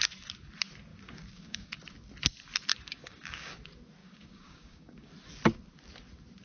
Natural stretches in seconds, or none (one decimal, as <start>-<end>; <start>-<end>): 0.0-0.9; 1.8-2.7; 3.6-4.0; 5.1-6.4